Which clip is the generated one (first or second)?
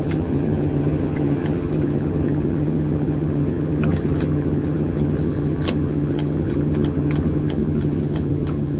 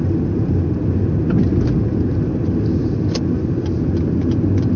first